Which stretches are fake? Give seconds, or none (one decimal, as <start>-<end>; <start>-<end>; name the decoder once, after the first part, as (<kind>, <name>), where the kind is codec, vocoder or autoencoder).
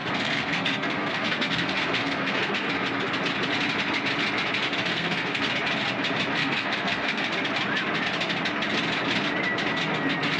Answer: 0.0-2.7 (codec, SNAC); 4.9-5.5; 6.4-7.3